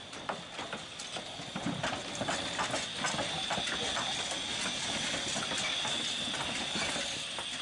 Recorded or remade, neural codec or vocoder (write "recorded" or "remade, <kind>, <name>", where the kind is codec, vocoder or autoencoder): recorded